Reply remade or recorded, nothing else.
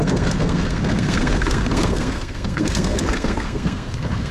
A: remade